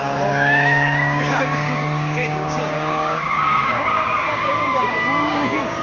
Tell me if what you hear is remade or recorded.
remade